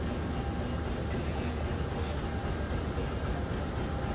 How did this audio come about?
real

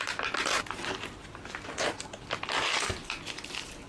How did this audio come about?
real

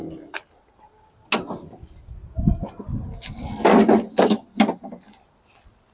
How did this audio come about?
real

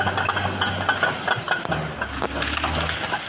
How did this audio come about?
real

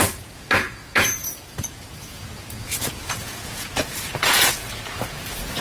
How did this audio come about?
fake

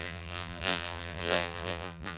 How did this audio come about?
fake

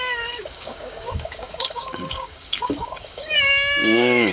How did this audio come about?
fake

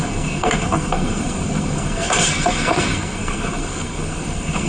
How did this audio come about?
fake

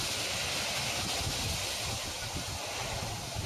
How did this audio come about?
real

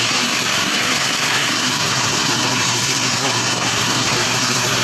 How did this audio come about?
fake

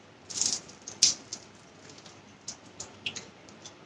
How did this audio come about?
real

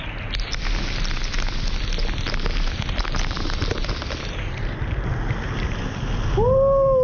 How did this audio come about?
real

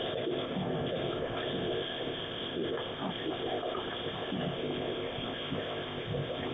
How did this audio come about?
fake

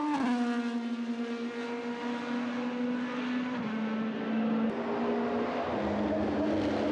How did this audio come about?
real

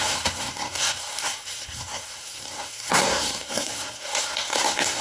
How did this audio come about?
fake